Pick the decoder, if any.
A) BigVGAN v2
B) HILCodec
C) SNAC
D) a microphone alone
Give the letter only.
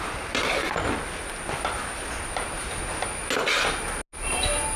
D